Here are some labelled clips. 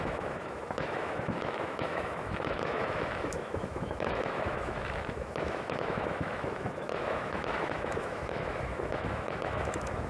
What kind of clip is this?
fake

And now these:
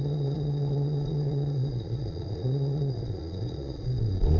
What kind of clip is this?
fake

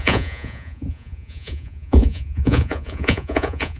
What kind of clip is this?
fake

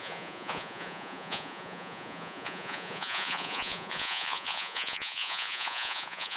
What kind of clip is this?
fake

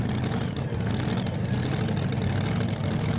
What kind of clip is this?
real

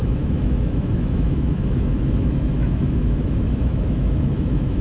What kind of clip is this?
fake